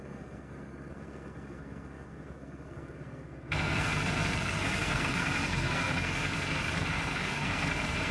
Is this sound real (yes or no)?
no